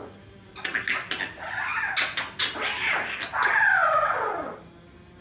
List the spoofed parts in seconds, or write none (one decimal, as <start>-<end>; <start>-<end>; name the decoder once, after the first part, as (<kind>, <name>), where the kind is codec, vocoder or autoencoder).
none